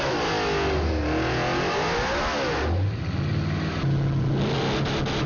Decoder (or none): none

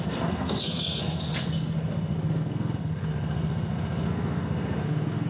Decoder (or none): codec, SNAC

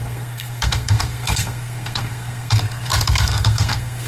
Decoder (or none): codec, SNAC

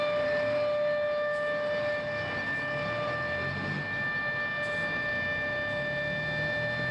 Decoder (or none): none